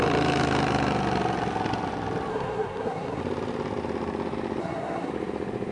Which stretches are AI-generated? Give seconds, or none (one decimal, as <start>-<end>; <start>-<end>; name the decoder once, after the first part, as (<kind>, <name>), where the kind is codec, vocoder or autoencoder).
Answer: 2.3-3.2 (codec, SNAC); 4.6-5.1